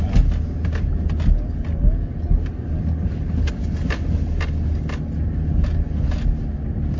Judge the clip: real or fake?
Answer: real